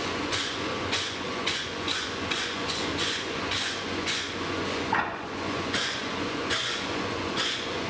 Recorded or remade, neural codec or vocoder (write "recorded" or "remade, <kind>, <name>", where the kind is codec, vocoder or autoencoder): remade, vocoder, Vocos